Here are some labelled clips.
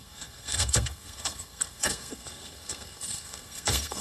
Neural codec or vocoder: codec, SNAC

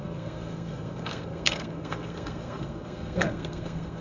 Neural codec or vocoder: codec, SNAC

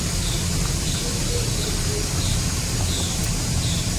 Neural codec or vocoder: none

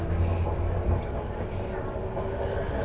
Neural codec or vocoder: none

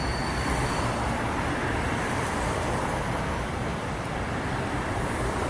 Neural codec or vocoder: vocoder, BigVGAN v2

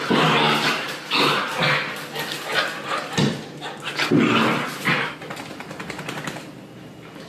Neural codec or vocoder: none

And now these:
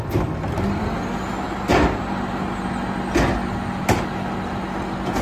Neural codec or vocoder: none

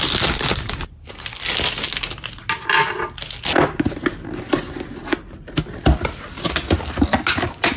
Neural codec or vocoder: none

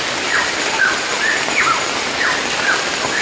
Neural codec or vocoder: none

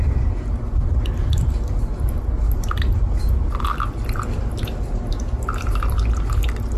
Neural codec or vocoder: none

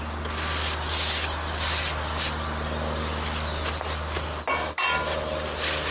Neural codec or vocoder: none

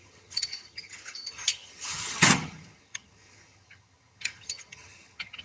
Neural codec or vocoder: vocoder, HiFi-GAN